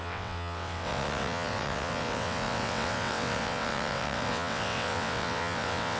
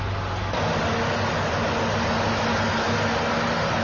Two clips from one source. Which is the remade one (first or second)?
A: first